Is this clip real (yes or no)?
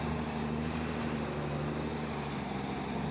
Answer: yes